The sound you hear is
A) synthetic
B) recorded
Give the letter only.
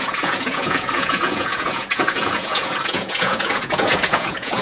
A